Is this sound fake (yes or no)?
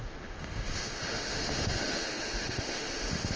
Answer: yes